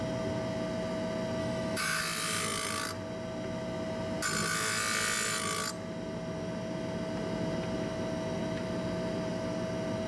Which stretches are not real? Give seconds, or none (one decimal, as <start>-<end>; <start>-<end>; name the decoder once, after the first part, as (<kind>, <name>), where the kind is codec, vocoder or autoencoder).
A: 1.4-2.0 (autoencoder, DAC-VAE)